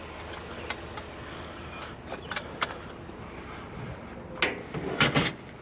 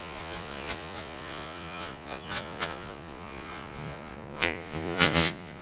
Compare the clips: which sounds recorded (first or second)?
first